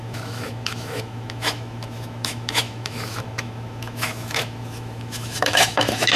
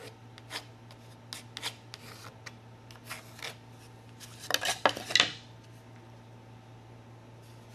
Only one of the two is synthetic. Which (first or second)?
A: first